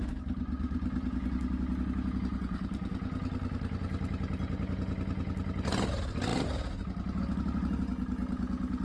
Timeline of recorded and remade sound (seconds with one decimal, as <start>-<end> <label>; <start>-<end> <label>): 0.0-2.3 recorded; 2.3-2.9 remade; 2.9-8.8 recorded

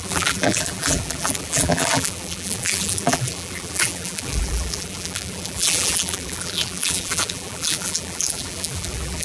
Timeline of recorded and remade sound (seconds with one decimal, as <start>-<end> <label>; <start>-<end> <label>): 0.0-9.2 remade

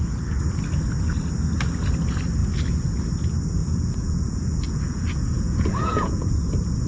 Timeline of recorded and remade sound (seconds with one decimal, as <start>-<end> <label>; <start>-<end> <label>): 0.0-3.6 recorded; 3.6-6.3 remade; 6.3-6.9 recorded

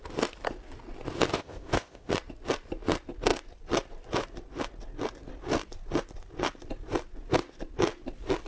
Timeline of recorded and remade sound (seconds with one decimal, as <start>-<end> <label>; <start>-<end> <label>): 0.0-1.3 recorded; 1.3-2.1 remade; 2.1-8.5 recorded